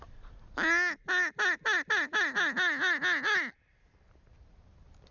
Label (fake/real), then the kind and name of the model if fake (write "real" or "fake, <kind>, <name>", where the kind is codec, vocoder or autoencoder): real